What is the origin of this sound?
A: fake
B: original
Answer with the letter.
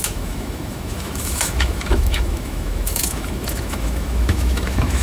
A